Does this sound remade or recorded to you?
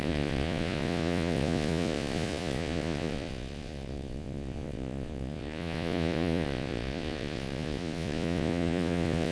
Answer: remade